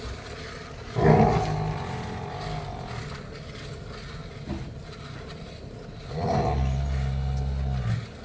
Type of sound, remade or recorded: recorded